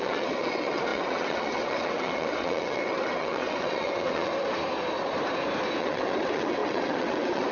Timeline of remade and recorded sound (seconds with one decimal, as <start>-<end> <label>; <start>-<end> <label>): 0.0-4.3 remade; 4.3-5.8 recorded; 5.8-7.5 remade